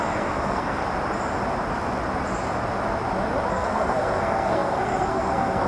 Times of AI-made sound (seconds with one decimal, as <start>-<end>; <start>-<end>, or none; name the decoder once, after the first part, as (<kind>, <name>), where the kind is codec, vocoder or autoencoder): 0.0-0.8 (codec, SNAC); 3.5-5.7